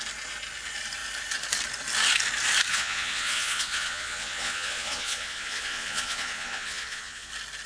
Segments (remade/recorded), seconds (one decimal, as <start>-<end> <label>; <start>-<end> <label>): 0.0-2.7 recorded; 2.7-7.3 remade; 7.3-7.7 recorded